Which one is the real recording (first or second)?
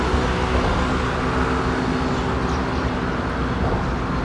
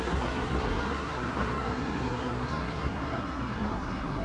first